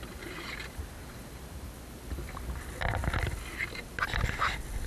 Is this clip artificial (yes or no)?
no